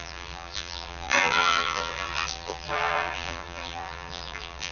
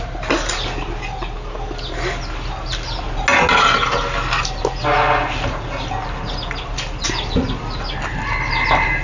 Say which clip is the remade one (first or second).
first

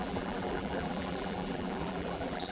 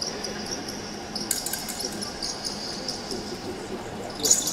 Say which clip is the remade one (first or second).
first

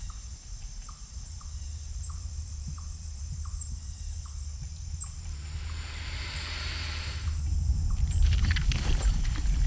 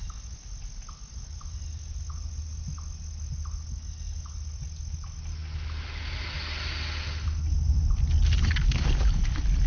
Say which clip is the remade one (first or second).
first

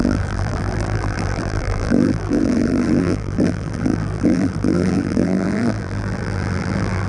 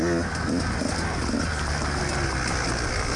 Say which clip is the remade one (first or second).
first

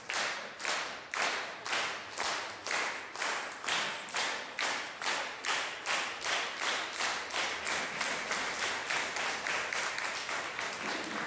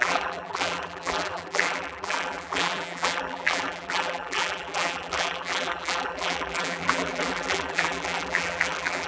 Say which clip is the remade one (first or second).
second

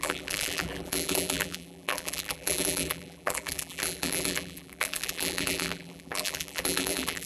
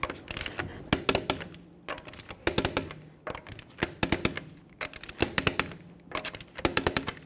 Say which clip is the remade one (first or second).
first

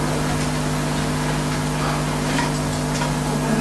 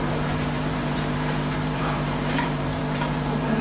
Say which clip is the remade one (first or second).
second